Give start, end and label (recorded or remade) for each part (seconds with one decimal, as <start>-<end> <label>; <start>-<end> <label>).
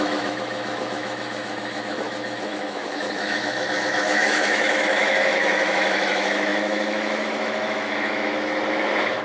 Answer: 0.0-9.2 remade